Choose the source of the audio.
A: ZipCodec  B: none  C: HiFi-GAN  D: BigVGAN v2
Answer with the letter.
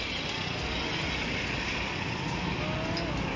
B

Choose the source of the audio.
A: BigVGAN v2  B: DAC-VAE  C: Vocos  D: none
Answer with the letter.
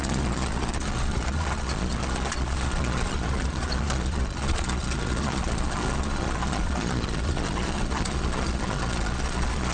C